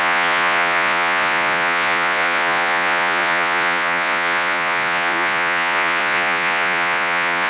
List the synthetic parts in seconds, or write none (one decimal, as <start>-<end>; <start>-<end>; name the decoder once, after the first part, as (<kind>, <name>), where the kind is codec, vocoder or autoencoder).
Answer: 0.0-7.5 (vocoder, Vocos)